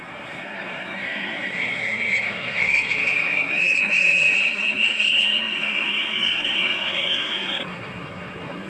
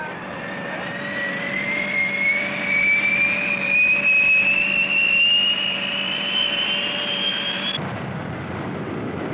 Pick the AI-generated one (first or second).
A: first